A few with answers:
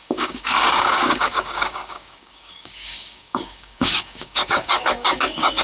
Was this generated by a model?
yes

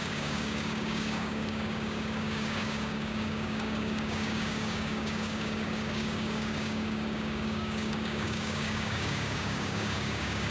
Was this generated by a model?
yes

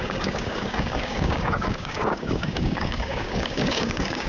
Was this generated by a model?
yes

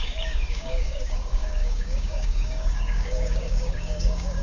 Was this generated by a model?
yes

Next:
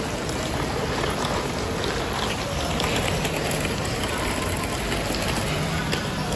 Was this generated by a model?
no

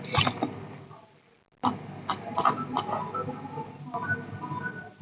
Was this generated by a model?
no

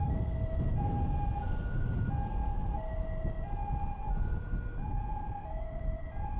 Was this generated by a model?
no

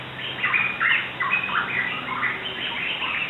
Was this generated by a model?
no